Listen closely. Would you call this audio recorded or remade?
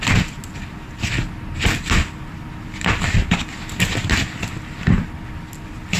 recorded